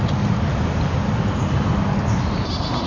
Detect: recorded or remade recorded